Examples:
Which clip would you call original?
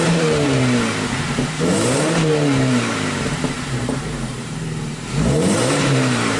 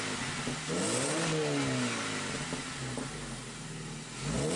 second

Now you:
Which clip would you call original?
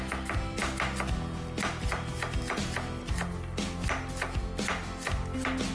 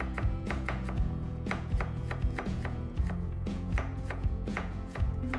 first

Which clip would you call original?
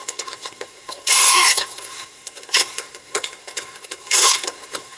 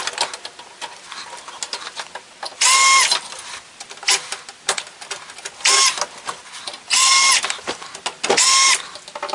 second